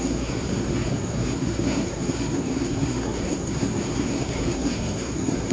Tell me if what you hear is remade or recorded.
remade